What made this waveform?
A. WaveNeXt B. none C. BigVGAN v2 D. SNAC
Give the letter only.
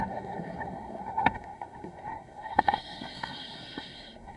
D